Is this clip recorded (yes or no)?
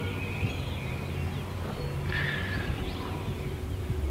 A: yes